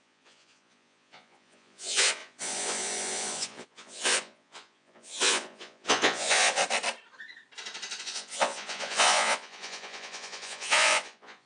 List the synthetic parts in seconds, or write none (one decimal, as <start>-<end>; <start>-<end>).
0.0-6.6; 8.0-11.5